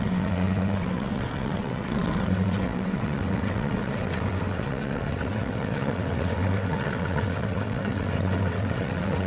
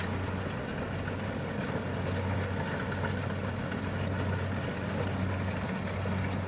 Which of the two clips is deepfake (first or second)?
first